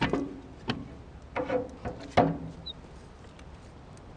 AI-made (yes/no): no